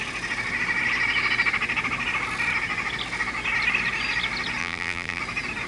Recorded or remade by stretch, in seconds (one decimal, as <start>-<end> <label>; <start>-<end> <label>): 0.0-4.6 recorded; 4.6-5.2 remade; 5.2-5.7 recorded